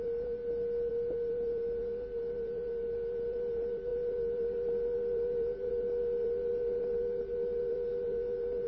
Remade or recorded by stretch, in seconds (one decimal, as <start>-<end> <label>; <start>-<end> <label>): 0.0-0.4 remade; 0.4-0.9 recorded; 0.9-8.7 remade